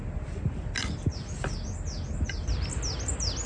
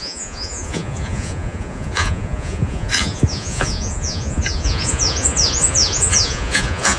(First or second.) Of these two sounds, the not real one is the second